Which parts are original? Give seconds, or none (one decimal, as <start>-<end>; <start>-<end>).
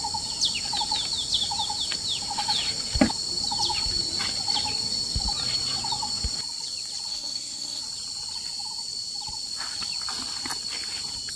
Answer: 0.0-7.1; 7.8-11.4